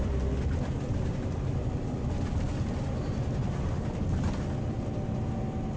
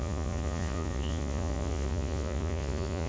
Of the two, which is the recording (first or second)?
first